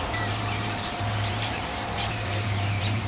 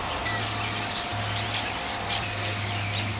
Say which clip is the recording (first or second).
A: second